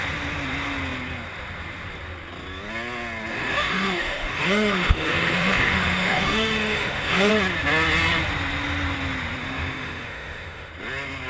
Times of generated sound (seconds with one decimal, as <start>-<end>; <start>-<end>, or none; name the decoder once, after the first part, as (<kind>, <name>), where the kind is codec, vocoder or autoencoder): 3.3-7.3 (autoencoder, DAC-VAE); 9.4-10.7